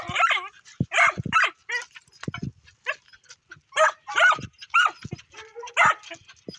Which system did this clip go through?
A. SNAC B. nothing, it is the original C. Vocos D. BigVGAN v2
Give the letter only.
B